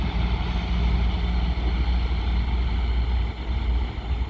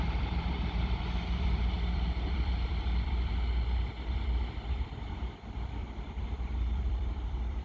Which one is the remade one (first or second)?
second